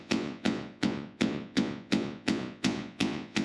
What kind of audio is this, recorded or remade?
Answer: remade